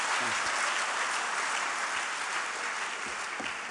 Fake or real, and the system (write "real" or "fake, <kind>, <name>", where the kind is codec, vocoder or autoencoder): real